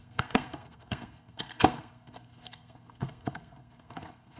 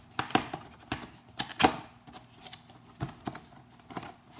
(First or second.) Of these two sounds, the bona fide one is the second